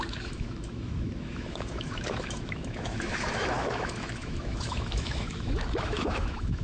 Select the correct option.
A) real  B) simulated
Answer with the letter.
B